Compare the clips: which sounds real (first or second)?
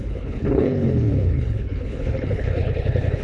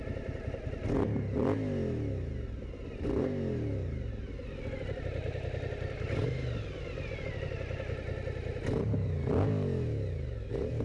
second